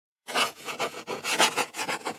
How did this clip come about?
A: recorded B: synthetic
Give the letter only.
B